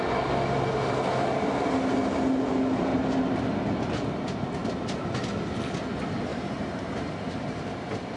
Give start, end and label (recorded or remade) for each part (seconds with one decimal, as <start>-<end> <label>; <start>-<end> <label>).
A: 0.0-2.9 recorded; 2.9-3.4 remade; 3.4-4.6 recorded; 4.6-5.2 remade; 5.2-6.3 recorded; 6.3-7.7 remade; 7.7-8.2 recorded